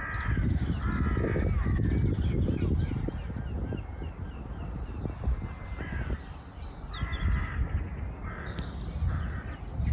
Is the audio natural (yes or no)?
yes